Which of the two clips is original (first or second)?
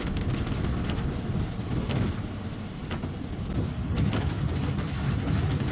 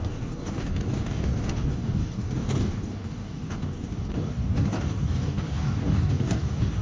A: first